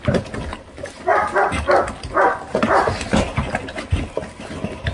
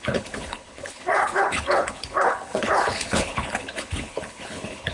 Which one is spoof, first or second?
second